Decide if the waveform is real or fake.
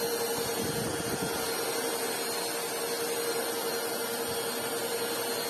real